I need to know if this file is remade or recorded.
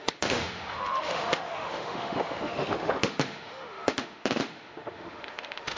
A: remade